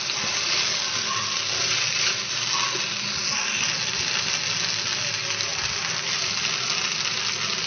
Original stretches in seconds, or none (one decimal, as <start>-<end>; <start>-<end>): 0.0-7.7